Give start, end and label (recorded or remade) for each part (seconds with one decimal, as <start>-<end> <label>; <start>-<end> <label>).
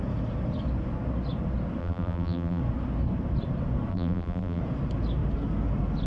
0.0-1.8 recorded; 1.8-2.6 remade; 2.6-3.9 recorded; 3.9-4.6 remade; 4.6-6.1 recorded